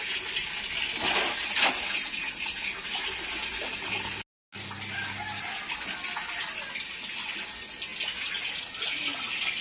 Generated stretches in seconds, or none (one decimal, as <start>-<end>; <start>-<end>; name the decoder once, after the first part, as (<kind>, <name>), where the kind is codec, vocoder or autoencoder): none